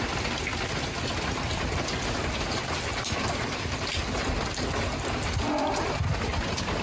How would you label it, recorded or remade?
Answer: recorded